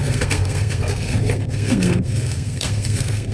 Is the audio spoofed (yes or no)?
yes